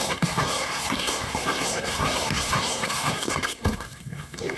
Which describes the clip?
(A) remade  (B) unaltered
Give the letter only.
A